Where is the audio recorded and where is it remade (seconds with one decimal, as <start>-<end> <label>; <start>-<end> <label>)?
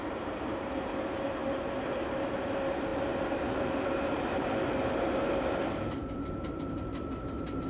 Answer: 0.0-7.7 remade